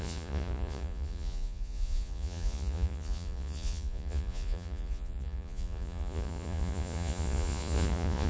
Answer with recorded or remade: remade